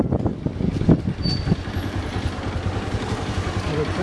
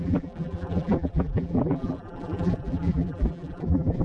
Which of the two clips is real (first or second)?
first